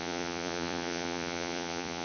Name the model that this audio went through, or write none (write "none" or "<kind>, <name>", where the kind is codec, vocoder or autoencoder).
vocoder, Vocos